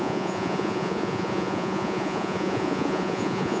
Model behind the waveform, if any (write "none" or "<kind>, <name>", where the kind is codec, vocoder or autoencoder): vocoder, Vocos